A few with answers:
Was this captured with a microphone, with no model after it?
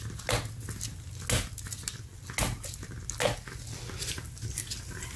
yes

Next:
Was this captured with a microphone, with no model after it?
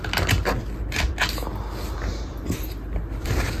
yes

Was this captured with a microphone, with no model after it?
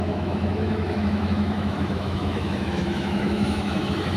no